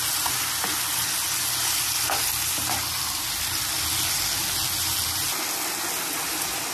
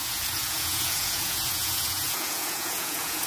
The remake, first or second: second